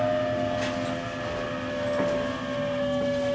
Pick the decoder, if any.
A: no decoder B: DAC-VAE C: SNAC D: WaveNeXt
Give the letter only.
A